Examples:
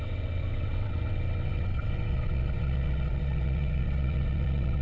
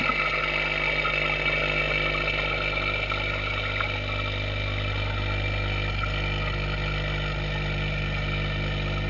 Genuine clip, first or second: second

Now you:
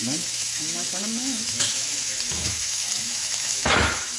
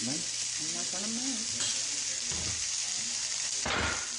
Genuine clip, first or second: second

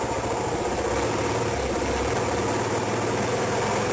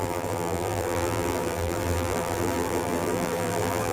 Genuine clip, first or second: first